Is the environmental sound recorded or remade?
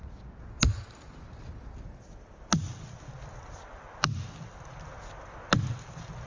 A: recorded